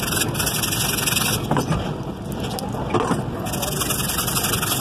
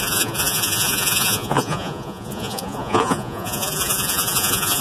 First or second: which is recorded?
first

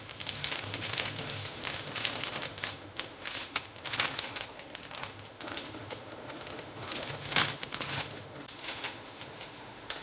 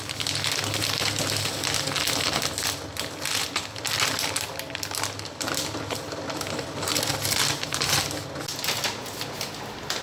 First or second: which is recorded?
second